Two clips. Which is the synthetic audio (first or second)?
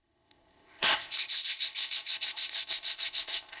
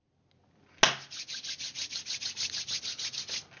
first